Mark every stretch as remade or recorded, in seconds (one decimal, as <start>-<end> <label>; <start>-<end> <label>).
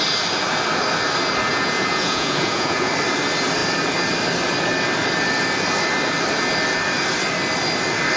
0.0-1.5 recorded; 1.5-2.9 remade; 2.9-8.2 recorded